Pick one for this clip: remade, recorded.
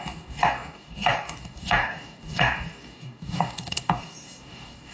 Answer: remade